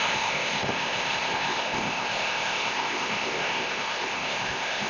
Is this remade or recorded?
remade